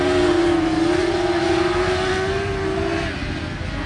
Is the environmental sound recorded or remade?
recorded